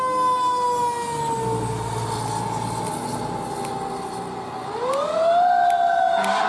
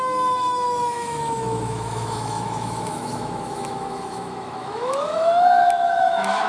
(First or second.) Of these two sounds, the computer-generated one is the second